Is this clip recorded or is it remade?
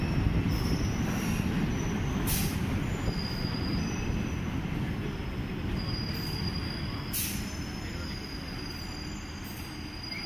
recorded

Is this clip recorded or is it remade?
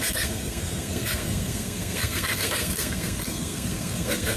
remade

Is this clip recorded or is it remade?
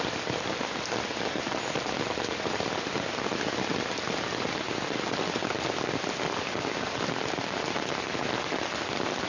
recorded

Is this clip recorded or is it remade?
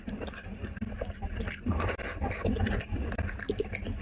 recorded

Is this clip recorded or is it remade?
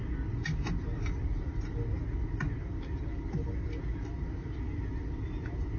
recorded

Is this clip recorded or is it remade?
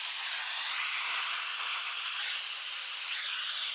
recorded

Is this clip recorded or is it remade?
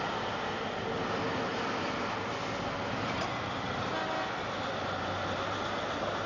recorded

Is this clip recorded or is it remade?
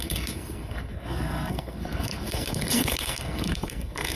remade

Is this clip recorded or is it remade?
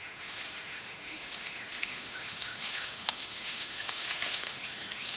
remade